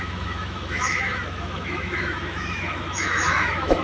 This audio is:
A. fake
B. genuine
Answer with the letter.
A